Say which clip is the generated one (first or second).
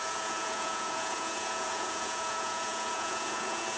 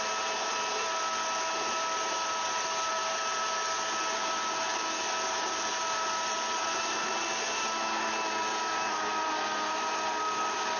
first